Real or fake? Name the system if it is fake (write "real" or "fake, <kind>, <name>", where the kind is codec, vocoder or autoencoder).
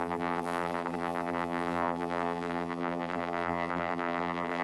fake, vocoder, BigVGAN v2